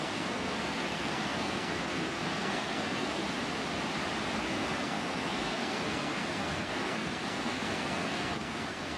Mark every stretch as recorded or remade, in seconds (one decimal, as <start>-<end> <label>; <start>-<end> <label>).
0.0-3.2 remade; 3.2-4.4 recorded; 4.4-9.0 remade